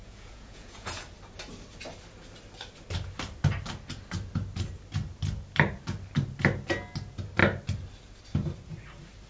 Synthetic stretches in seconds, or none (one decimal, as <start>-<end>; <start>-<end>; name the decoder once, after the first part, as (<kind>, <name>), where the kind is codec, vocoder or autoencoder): 0.0-1.0 (vocoder, Vocos)